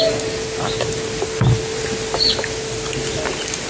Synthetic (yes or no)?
no